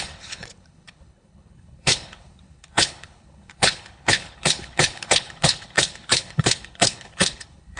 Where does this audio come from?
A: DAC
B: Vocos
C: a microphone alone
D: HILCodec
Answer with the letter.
D